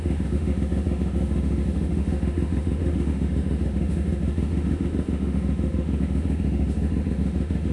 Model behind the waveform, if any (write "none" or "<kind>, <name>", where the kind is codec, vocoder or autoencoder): autoencoder, DAC-VAE